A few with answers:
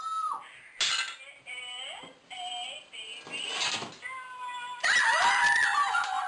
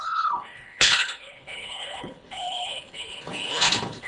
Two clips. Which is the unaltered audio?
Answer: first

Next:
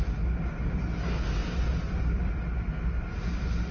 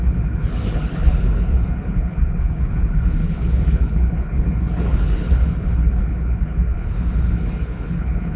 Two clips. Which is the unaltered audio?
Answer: first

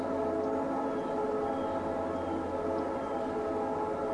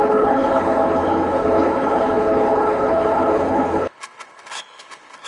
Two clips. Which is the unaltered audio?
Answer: first